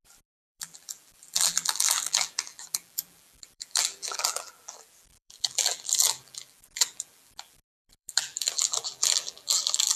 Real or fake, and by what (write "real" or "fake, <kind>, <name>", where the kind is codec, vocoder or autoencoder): fake, vocoder, BigVGAN v2